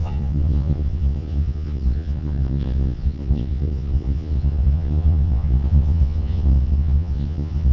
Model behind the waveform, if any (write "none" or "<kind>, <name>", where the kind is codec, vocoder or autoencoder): vocoder, Vocos